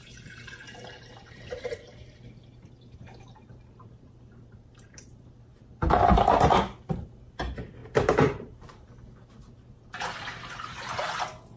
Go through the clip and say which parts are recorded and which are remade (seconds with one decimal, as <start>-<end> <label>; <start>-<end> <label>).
0.0-1.7 remade; 1.7-3.4 recorded; 3.4-7.2 remade; 7.2-7.8 recorded; 7.8-8.9 remade; 8.9-11.6 recorded